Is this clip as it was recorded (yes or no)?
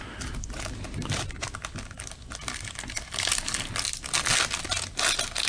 yes